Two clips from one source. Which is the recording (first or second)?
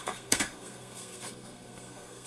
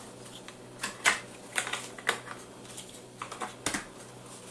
second